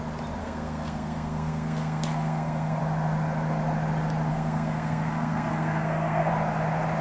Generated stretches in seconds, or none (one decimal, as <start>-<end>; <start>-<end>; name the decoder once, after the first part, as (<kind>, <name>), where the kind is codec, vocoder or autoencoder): 0.4-2.8 (codec, SNAC); 4.3-6.3